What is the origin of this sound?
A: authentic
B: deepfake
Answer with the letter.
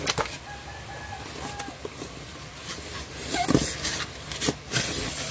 A